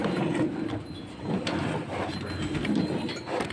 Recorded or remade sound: recorded